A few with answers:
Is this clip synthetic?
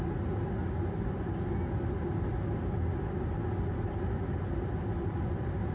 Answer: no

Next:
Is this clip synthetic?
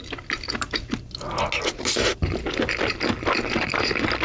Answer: no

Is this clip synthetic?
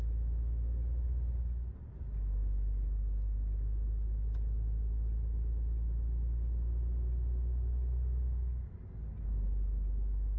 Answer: no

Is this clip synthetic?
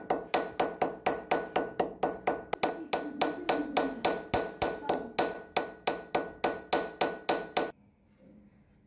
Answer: no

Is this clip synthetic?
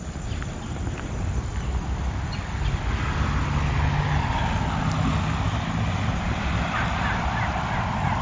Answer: no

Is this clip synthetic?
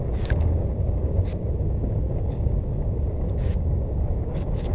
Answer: yes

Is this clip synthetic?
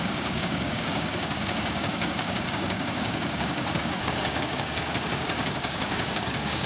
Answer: yes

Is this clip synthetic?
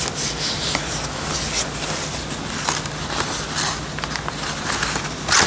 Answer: no